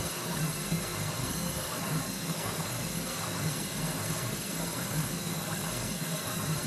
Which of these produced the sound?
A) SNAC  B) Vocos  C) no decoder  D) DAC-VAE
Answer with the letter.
A